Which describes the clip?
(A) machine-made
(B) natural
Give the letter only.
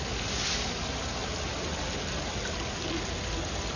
B